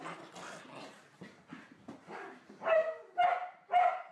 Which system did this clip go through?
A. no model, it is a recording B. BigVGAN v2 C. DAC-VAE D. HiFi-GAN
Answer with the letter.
A